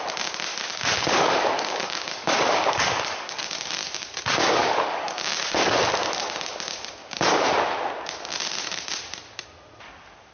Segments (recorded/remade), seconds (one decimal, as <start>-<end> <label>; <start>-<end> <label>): 0.0-0.5 recorded; 0.5-3.4 remade; 3.4-4.6 recorded; 4.6-5.2 remade; 5.2-7.0 recorded; 7.0-7.5 remade; 7.5-10.3 recorded